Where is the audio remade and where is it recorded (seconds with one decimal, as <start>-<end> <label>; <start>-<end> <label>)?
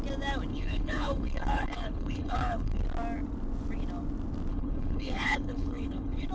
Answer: 0.0-0.5 recorded; 0.5-2.8 remade; 2.8-4.5 recorded; 4.5-6.3 remade